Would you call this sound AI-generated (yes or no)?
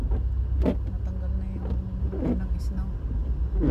no